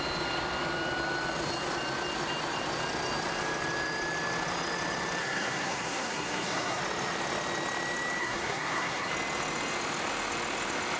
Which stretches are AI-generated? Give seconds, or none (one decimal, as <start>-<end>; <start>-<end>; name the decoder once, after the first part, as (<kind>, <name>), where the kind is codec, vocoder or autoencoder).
5.2-6.8 (codec, SNAC); 8.2-9.1